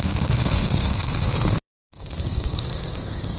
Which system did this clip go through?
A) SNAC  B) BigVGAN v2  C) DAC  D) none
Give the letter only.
A